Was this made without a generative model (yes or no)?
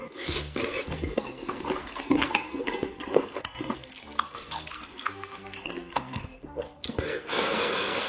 no